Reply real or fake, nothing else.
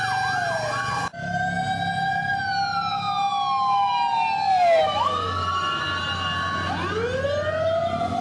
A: real